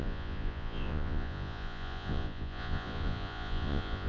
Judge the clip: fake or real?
fake